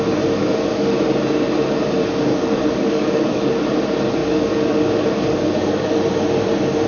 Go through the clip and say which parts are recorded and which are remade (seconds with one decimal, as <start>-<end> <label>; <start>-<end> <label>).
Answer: 0.0-0.4 recorded; 0.4-1.0 remade; 1.0-2.3 recorded; 2.3-3.5 remade; 3.5-4.2 recorded; 4.2-5.9 remade; 5.9-6.9 recorded